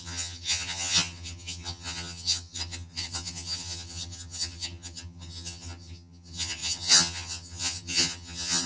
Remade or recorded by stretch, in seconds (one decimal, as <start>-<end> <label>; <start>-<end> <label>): 0.0-8.7 remade